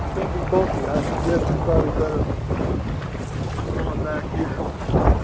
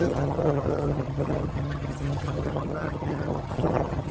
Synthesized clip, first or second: second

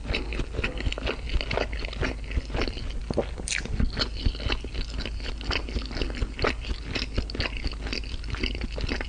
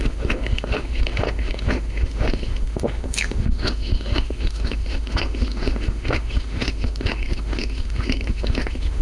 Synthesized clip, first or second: second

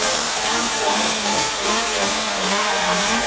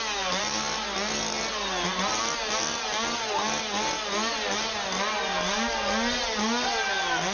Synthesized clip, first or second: first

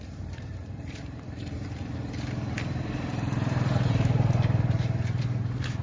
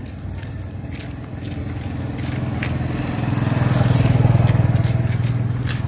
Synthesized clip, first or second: first